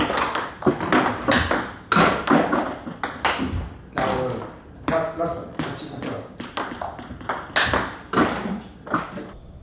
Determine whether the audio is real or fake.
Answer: real